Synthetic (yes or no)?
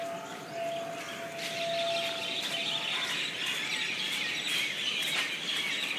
no